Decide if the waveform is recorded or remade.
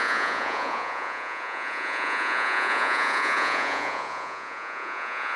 remade